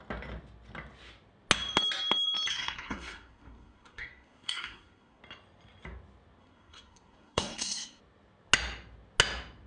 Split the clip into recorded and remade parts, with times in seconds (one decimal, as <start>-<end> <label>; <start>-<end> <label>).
0.0-2.5 recorded; 2.5-5.2 remade; 5.2-6.4 recorded; 6.4-8.0 remade; 8.0-9.7 recorded